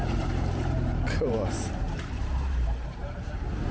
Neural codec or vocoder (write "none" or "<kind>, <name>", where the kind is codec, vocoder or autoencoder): vocoder, BigVGAN v2